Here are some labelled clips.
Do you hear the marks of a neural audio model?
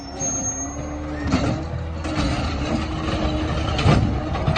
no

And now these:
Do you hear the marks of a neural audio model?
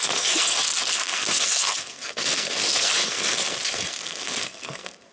yes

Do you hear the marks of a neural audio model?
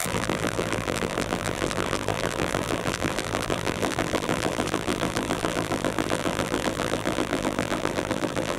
yes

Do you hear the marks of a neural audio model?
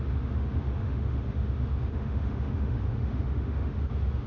yes